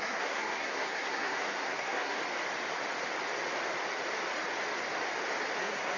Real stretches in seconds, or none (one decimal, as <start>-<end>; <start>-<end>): 2.2-5.6